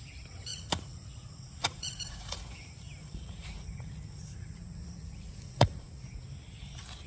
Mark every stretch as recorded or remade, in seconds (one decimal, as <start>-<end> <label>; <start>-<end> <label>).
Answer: 0.0-0.5 recorded; 0.5-2.4 remade; 2.4-3.0 recorded; 3.0-5.9 remade; 5.9-7.1 recorded